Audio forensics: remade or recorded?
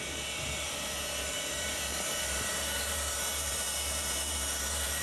remade